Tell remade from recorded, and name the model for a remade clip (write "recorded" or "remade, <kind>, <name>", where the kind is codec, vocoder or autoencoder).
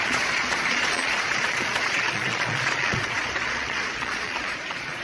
remade, vocoder, Vocos